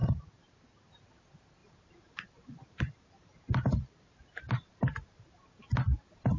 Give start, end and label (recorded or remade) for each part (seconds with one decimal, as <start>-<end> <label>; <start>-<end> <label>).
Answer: 0.0-0.9 remade; 0.9-1.6 recorded; 1.6-5.4 remade; 5.4-6.4 recorded